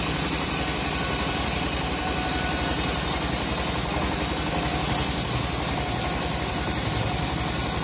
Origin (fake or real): real